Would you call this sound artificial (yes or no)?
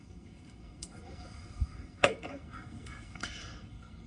yes